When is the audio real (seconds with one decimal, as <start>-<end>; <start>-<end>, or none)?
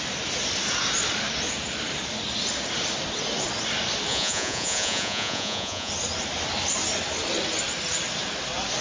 0.0-4.1; 5.9-8.8